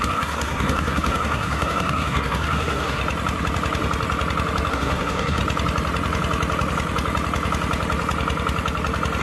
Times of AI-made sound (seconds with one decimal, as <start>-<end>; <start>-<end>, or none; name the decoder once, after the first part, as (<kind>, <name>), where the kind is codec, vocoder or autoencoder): 0.0-3.0 (codec, SNAC); 4.7-5.4